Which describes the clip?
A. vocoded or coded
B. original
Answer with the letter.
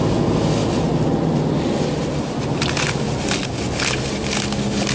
B